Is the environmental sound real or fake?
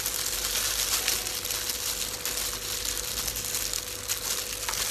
real